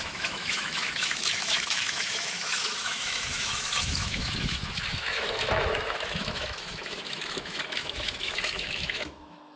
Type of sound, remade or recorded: remade